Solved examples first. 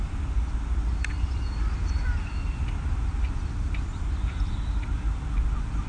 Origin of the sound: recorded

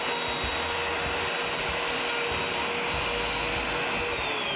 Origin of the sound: recorded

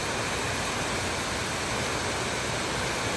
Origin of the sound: recorded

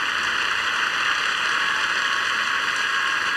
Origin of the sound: recorded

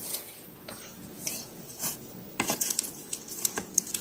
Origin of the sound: remade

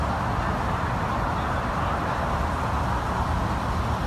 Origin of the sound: recorded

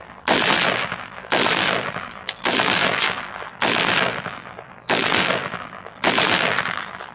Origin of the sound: remade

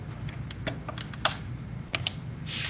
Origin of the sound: remade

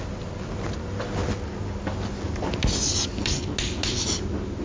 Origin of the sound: recorded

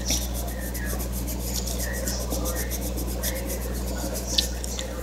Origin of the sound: recorded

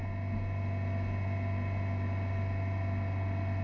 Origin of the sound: recorded